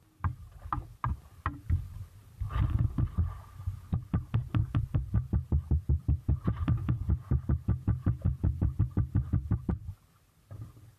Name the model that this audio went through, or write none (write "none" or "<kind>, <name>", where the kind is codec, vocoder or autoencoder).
none